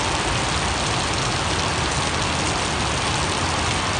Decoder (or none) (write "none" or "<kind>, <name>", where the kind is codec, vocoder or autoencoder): none